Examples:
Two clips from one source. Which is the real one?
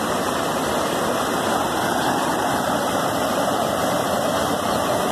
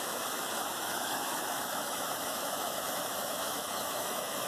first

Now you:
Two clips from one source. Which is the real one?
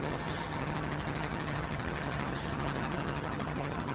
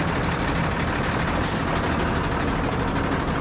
second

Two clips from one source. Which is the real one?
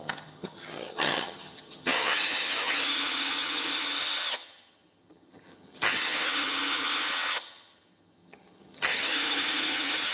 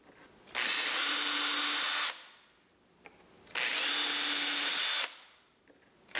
second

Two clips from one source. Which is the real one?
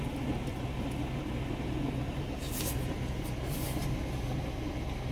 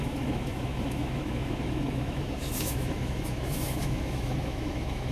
first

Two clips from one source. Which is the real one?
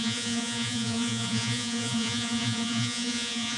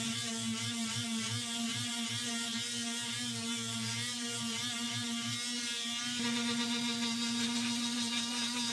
second